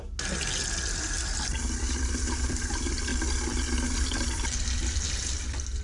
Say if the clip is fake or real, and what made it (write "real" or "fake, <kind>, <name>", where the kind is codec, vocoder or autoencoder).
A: real